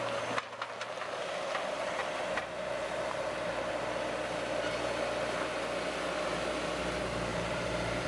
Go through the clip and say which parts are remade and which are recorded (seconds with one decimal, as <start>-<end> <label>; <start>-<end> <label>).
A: 0.0-2.0 recorded; 2.0-3.7 remade; 3.7-7.3 recorded; 7.3-8.1 remade